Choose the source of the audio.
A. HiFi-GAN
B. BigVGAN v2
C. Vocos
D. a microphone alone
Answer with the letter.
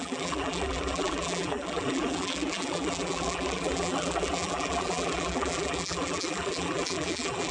B